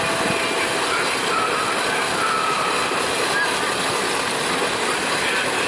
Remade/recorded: recorded